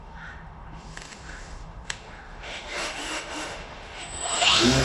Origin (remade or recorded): remade